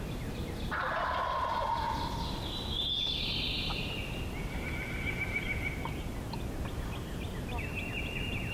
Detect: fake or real real